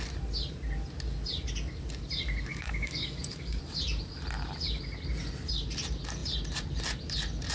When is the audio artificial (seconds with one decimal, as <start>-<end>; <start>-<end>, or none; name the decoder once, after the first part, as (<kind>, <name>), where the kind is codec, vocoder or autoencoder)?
2.5-3.6 (codec, DAC)

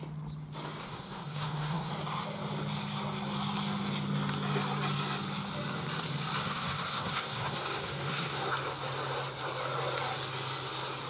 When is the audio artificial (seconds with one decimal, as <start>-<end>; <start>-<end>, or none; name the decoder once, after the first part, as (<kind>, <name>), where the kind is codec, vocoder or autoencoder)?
0.8-1.9 (codec, SNAC); 6.4-8.5

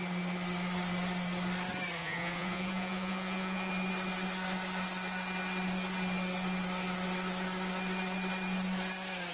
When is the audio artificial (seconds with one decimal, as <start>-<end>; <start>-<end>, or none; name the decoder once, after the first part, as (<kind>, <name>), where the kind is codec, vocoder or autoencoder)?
2.0-3.7 (vocoder, Vocos)